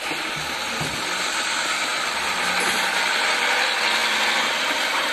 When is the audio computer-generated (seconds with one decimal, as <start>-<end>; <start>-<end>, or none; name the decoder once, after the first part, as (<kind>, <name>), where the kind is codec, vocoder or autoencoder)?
none